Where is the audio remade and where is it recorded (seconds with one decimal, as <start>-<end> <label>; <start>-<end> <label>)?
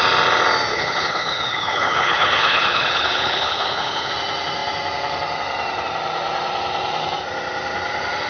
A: 0.0-0.7 recorded; 0.7-4.1 remade; 4.1-8.3 recorded